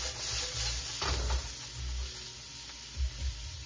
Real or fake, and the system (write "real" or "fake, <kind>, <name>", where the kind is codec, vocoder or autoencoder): real